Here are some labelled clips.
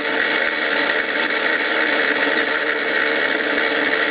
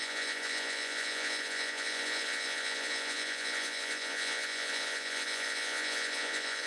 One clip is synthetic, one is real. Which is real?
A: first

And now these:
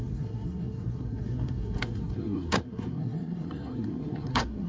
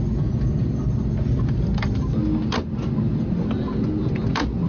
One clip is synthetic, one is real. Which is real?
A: second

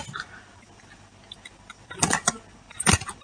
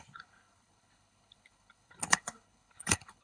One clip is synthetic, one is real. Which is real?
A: first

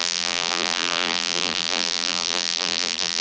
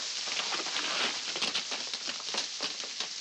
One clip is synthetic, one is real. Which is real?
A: second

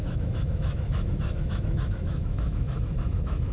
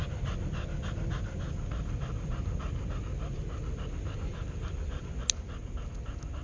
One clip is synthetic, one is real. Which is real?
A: second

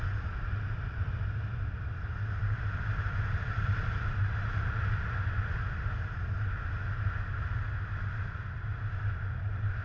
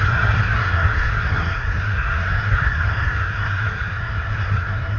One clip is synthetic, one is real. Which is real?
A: first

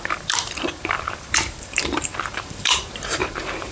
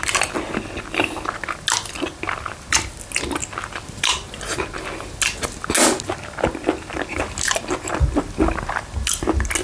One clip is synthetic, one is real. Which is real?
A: second